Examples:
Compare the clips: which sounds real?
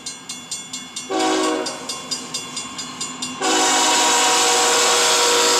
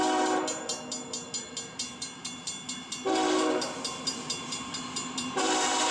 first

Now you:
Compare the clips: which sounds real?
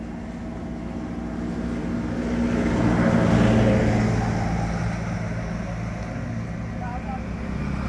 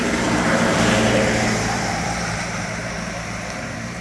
first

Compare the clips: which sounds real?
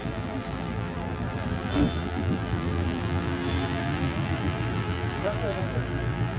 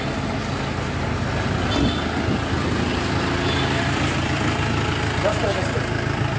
second